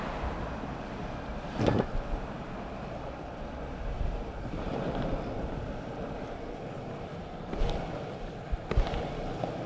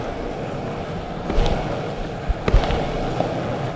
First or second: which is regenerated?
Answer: first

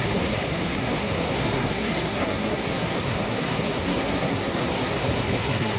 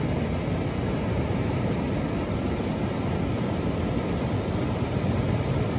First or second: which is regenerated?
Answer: first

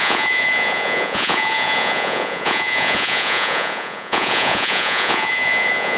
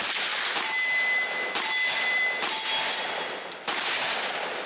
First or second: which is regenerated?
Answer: first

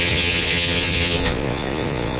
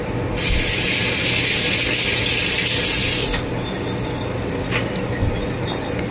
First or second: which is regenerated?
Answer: first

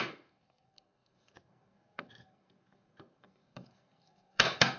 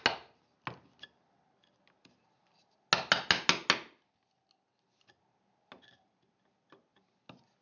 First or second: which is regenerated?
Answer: first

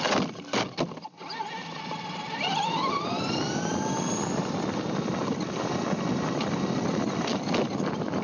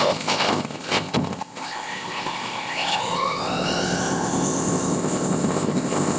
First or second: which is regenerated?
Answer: second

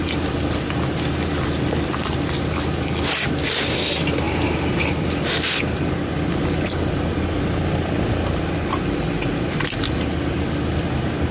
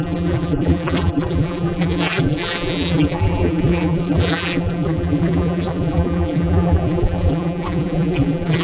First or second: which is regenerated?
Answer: second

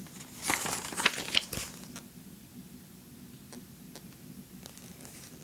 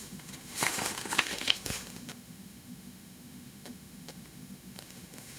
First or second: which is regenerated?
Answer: second